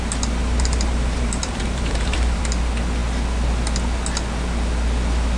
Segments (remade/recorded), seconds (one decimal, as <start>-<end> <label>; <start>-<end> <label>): 0.0-0.4 recorded; 0.4-2.4 remade; 2.4-5.4 recorded